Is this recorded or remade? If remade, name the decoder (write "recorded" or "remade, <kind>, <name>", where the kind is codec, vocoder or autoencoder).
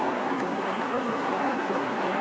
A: remade, codec, SNAC